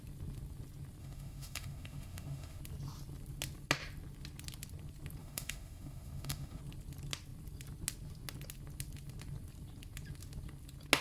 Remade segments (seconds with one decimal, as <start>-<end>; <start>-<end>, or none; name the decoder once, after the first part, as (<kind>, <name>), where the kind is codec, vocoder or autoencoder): 1.0-2.6 (autoencoder, DAC-VAE); 5.2-6.6